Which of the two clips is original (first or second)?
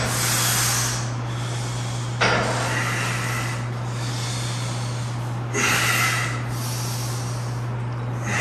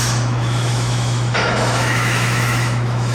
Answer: first